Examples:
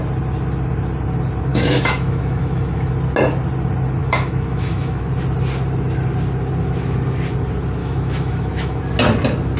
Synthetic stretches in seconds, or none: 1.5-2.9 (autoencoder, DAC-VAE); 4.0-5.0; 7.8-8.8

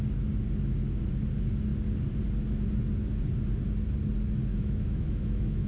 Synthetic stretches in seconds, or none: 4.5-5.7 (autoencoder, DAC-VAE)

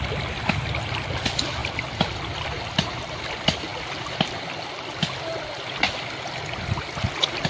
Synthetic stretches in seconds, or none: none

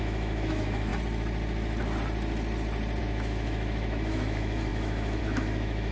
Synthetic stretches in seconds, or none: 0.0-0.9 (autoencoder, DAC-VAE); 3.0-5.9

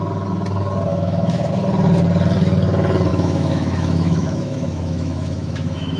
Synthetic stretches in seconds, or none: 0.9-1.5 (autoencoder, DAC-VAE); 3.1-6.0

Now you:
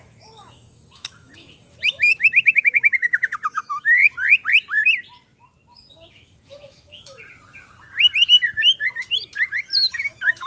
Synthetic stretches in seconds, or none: 0.0-4.0 (autoencoder, DAC-VAE); 5.9-7.2; 9.9-10.5

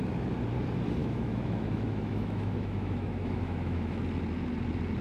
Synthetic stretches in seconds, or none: 1.0-4.0 (autoencoder, DAC-VAE)